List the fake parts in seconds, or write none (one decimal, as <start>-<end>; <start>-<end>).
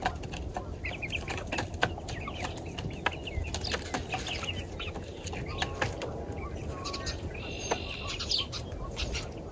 none